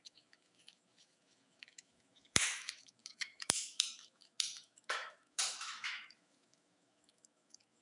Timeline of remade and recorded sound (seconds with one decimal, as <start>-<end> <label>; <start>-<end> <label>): 0.0-7.8 remade